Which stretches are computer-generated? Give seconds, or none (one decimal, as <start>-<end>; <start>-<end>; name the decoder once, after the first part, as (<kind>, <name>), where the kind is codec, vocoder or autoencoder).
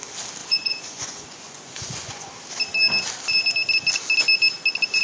0.4-2.3 (vocoder, Vocos)